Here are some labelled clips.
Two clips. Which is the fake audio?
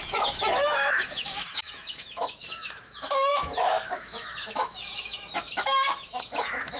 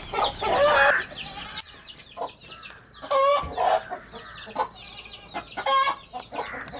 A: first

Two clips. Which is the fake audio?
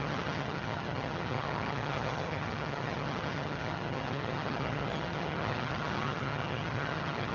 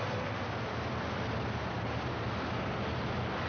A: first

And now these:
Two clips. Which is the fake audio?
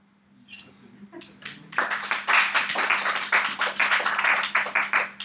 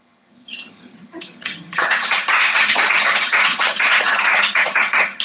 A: second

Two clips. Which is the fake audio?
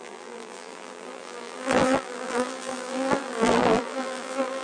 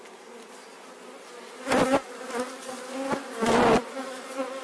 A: first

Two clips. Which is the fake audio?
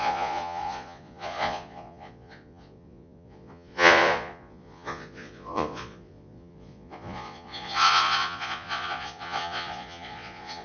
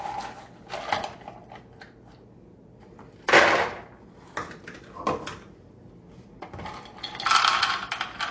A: first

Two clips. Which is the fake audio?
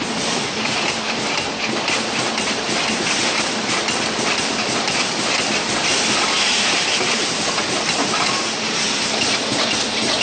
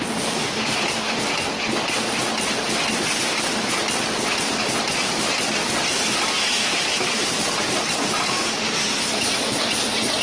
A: first